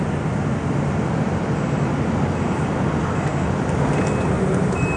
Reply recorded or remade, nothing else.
recorded